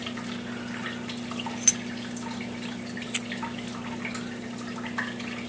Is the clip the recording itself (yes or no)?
yes